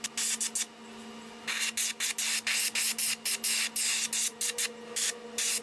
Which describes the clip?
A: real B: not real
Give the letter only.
A